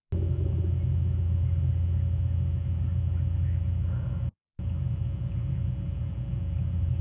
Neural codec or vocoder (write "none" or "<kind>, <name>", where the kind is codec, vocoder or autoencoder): none